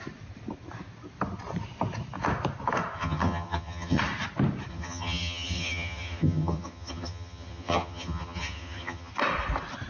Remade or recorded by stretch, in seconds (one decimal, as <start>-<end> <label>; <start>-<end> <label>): 0.0-3.0 recorded; 3.0-4.0 remade; 4.0-4.7 recorded; 4.7-9.1 remade; 9.1-9.9 recorded